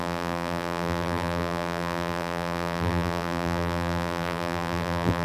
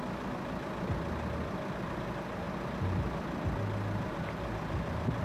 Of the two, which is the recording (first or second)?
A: second